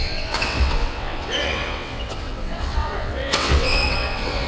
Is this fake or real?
fake